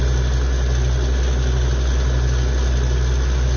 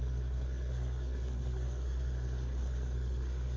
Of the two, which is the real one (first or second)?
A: first